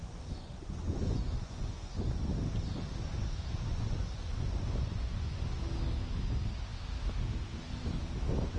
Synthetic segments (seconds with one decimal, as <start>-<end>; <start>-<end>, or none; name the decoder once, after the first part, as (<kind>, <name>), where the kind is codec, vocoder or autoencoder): 0.0-2.2 (vocoder, Vocos); 3.7-5.6